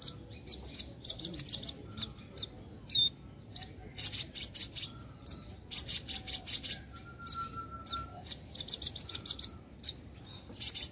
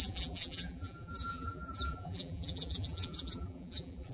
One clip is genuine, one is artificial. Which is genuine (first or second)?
first